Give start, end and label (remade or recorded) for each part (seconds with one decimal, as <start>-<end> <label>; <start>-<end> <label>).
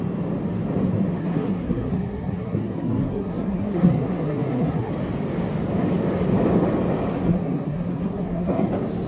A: 0.0-1.2 recorded; 1.2-4.9 remade; 4.9-7.1 recorded; 7.1-8.7 remade; 8.7-9.1 recorded